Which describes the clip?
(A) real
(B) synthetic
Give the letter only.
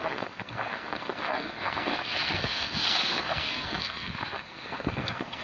B